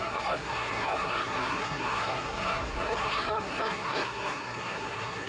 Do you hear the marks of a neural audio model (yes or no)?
yes